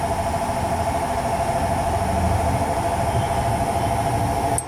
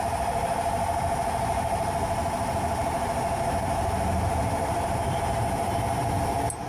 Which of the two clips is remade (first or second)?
second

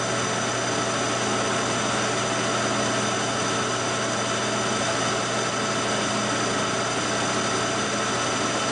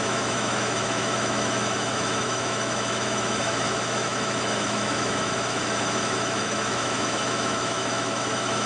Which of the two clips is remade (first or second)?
second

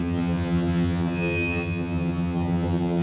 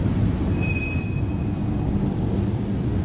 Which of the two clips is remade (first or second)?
first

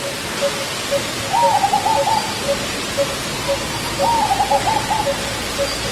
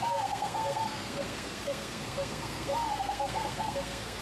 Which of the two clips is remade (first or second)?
second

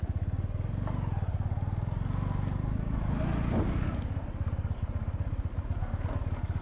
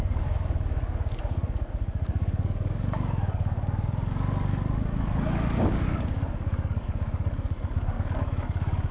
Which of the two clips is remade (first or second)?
second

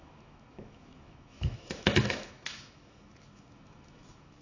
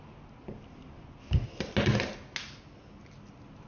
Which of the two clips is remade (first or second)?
first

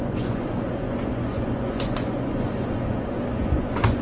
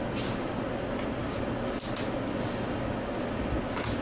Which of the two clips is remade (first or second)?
first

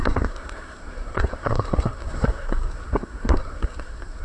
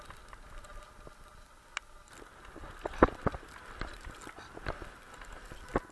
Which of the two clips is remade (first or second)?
first